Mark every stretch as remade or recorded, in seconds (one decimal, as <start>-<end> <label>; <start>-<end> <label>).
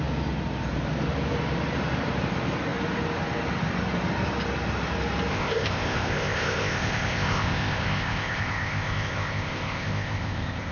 0.0-5.3 recorded; 5.3-10.7 remade